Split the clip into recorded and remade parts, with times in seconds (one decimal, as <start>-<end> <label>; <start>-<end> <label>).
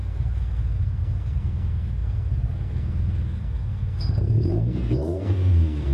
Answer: 0.0-5.9 remade